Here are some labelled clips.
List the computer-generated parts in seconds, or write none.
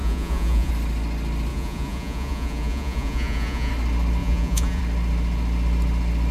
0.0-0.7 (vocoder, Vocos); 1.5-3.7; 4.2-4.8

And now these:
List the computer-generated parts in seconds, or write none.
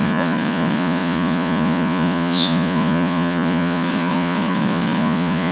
0.0-5.5 (vocoder, Vocos)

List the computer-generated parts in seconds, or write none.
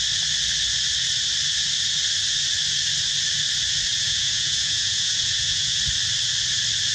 3.9-5.8 (vocoder, Vocos)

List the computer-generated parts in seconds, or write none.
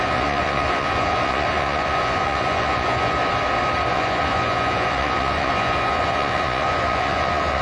0.0-3.2 (vocoder, Vocos); 3.9-7.6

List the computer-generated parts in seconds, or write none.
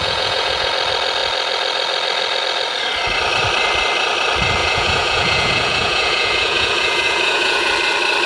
0.0-0.7 (vocoder, Vocos); 4.6-7.7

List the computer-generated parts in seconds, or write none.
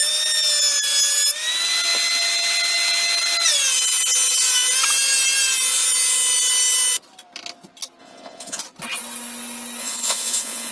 8.0-8.6 (vocoder, Vocos); 9.8-10.7